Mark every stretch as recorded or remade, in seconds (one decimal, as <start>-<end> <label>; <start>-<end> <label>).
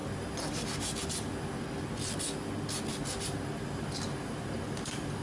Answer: 0.0-0.5 recorded; 0.5-1.0 remade; 1.0-3.6 recorded; 3.6-5.2 remade